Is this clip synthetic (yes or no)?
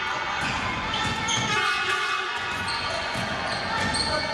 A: yes